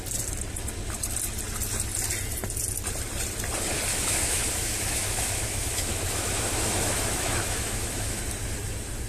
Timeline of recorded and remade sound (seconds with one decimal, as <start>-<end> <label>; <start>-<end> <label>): 0.0-3.9 recorded; 3.9-8.2 remade; 8.2-9.1 recorded